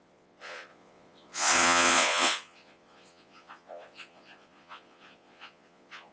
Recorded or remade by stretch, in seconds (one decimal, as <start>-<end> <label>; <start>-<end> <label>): 0.0-6.1 remade